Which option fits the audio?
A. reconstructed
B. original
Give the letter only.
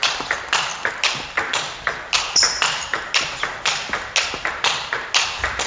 B